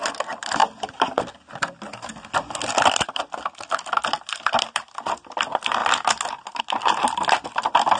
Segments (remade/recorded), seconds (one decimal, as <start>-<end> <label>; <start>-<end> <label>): 0.0-5.8 remade; 5.8-6.6 recorded; 6.6-8.0 remade